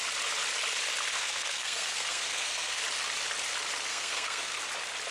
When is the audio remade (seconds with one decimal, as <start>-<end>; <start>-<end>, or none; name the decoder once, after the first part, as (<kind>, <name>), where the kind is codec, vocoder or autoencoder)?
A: 1.1-2.8 (codec, SNAC); 3.9-4.6